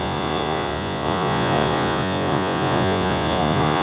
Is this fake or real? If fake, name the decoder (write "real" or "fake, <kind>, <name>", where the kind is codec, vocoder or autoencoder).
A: fake, vocoder, Vocos